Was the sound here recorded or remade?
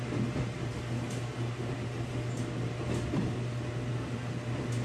recorded